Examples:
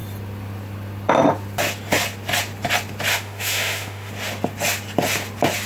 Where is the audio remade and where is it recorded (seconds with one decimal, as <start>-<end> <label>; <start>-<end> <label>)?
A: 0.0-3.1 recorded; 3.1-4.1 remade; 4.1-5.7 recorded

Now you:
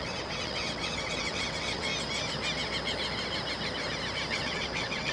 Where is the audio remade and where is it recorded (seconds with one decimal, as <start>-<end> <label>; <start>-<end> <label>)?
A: 0.0-1.9 remade; 1.9-4.3 recorded; 4.3-5.1 remade

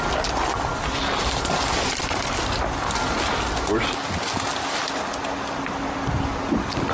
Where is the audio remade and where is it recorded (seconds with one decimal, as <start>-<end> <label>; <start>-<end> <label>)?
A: 0.0-6.9 recorded